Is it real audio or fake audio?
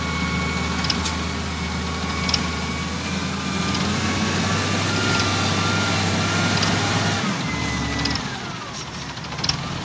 real